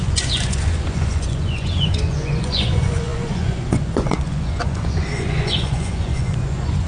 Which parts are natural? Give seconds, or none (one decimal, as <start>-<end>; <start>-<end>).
none